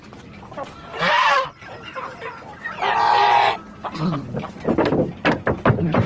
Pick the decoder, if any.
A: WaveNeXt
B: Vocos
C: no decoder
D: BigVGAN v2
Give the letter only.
D